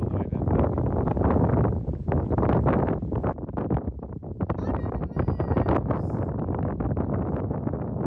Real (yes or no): yes